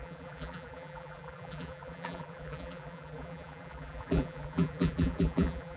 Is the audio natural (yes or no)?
no